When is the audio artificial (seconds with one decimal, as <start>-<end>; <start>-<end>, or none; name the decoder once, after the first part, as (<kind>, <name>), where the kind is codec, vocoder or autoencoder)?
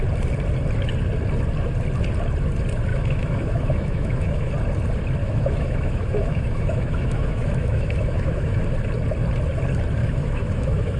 2.9-4.5 (autoencoder, DAC-VAE); 5.2-8.6; 10.0-11.0